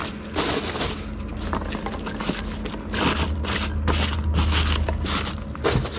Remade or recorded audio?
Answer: recorded